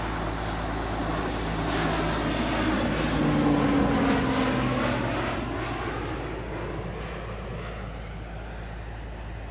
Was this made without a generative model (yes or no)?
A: yes